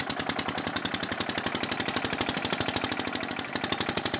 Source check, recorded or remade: recorded